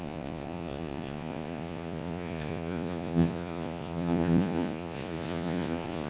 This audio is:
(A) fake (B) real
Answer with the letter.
A